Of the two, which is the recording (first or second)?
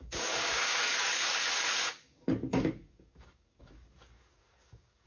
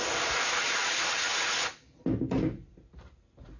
second